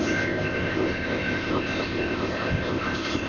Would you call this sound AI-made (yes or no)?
yes